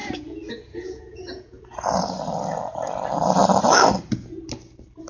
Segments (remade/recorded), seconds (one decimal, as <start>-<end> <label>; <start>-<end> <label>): 0.0-1.6 remade; 1.6-5.1 recorded